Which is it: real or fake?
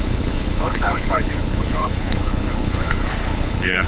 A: fake